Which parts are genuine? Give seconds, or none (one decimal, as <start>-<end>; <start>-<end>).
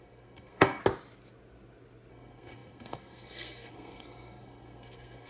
0.8-2.1